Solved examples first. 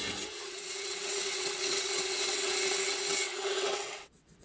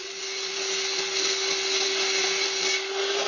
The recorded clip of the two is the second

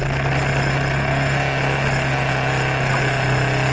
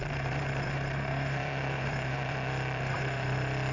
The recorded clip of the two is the first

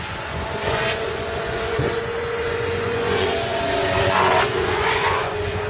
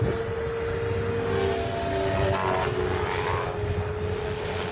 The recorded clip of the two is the second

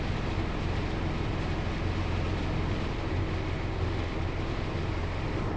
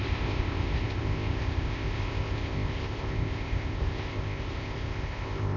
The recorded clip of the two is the first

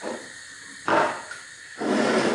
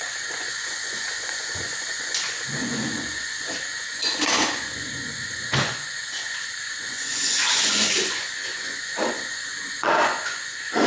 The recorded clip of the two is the first